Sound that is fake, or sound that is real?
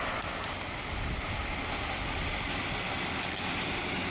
real